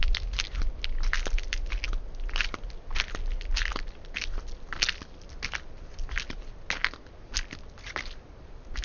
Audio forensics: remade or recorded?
recorded